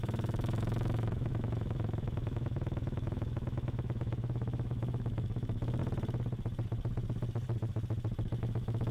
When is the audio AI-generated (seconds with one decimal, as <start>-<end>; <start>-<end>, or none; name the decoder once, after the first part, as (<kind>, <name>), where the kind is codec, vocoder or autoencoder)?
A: 0.0-5.8 (autoencoder, DAC-VAE); 8.4-8.9